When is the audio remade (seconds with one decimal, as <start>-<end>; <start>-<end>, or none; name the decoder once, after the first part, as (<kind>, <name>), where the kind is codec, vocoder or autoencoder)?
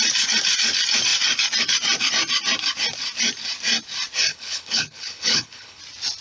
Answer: 4.3-5.8 (codec, HILCodec)